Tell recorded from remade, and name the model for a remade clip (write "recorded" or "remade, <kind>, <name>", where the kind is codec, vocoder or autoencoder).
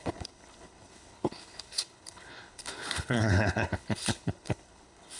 remade, codec, HILCodec